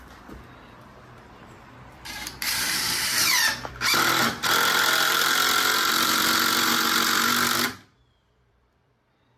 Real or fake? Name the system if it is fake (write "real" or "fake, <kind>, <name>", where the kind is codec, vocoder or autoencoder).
fake, vocoder, BigVGAN v2